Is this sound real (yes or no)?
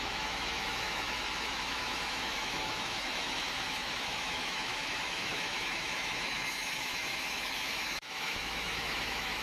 no